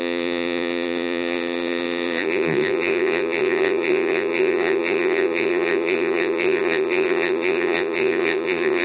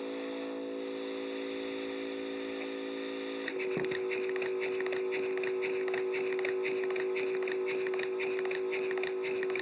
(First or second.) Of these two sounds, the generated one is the first